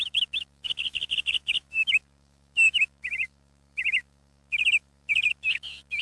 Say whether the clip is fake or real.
fake